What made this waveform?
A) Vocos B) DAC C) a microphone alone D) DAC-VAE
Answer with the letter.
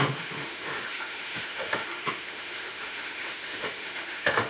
D